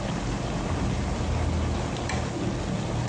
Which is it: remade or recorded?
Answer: recorded